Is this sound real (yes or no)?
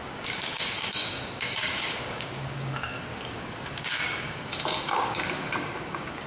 no